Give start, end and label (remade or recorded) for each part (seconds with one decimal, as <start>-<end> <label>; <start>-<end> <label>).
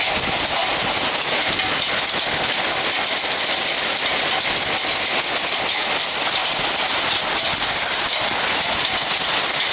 0.0-9.7 recorded